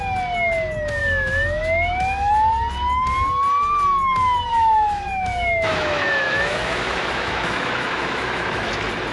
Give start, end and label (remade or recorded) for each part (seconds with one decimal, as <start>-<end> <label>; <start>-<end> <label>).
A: 0.0-1.0 recorded; 1.0-2.3 remade; 2.3-4.5 recorded; 4.5-8.7 remade; 8.7-9.1 recorded